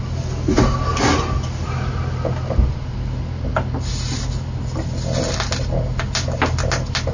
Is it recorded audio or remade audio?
recorded